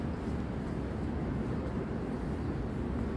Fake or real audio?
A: real